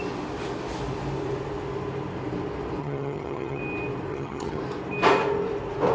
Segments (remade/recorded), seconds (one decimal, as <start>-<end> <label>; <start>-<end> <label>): 0.0-2.8 recorded; 2.8-3.6 remade; 3.6-4.1 recorded; 4.1-4.6 remade; 4.6-5.9 recorded